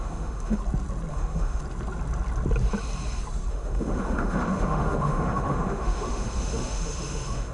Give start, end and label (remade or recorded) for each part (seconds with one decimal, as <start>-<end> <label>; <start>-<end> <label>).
0.0-0.6 remade; 0.6-1.1 recorded; 1.1-1.6 remade; 1.6-3.5 recorded; 3.5-7.5 remade